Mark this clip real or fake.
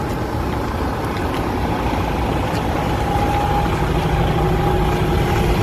real